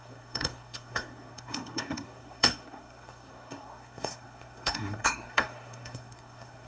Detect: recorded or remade remade